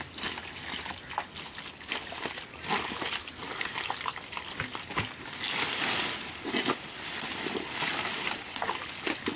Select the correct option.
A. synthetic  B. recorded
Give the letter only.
B